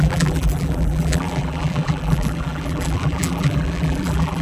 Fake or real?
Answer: fake